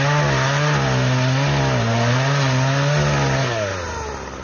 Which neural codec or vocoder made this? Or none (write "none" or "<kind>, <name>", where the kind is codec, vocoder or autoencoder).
none